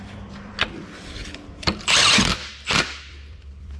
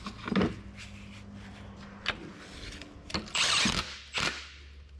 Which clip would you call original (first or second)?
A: second